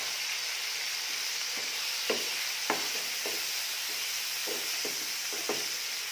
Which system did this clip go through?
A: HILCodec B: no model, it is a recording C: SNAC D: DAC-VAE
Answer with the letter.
B